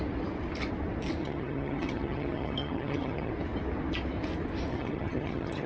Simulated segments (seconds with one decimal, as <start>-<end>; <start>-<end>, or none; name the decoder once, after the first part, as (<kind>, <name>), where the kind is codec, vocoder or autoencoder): 1.2-3.3 (vocoder, HiFi-GAN); 4.7-5.7